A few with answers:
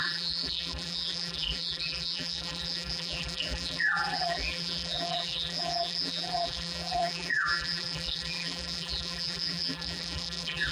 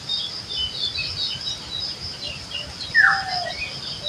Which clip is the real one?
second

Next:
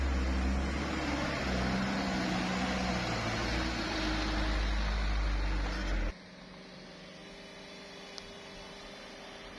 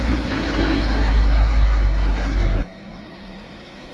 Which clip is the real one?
first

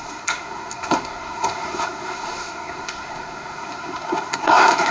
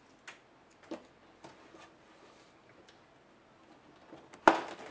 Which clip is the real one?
second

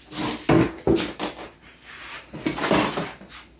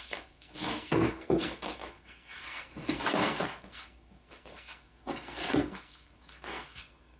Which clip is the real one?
first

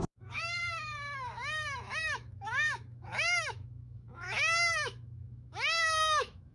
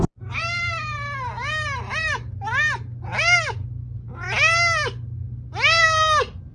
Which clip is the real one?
second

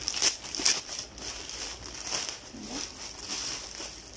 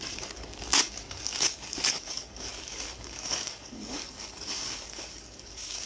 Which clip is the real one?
first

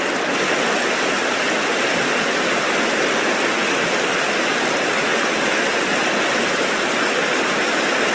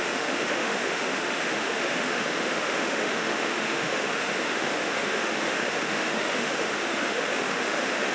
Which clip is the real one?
first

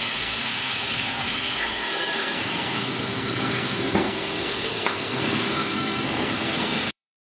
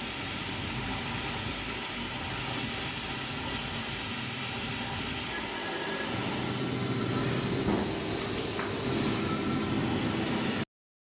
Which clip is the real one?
second